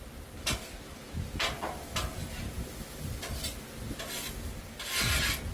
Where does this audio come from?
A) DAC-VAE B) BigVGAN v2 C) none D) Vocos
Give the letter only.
C